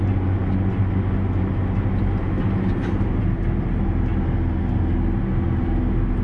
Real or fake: real